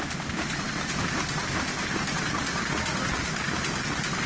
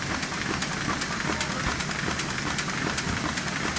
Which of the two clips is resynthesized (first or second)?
first